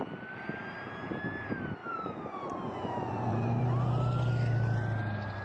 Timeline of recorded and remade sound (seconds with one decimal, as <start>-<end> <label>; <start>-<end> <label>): 0.0-1.8 recorded; 1.8-3.6 remade; 3.6-5.4 recorded